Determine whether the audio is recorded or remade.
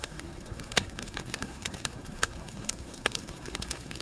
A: remade